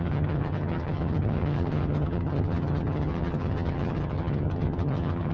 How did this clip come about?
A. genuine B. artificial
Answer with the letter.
B